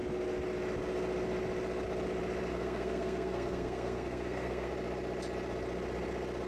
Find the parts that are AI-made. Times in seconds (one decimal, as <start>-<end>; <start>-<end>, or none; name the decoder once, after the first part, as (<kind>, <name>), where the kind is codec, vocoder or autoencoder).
2.5-4.7 (codec, SNAC)